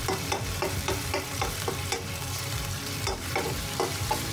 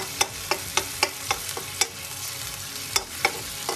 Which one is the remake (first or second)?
first